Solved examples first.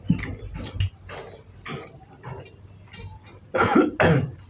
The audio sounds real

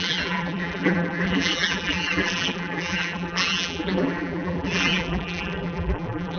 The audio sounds fake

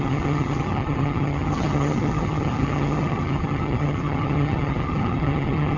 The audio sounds fake